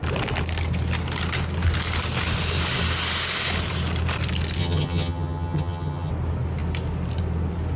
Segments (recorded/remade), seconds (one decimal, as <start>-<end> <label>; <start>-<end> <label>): 0.0-4.6 recorded; 4.6-6.1 remade; 6.1-7.8 recorded